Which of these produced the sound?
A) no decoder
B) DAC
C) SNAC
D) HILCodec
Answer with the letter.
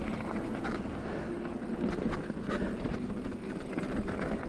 A